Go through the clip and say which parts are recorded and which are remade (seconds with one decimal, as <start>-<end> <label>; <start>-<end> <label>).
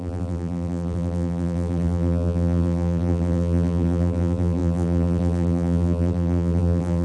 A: 0.0-7.0 remade